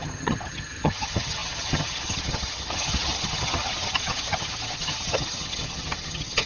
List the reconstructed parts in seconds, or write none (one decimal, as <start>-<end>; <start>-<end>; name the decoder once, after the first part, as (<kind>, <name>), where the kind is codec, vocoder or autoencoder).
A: 0.0-6.5 (vocoder, HiFi-GAN)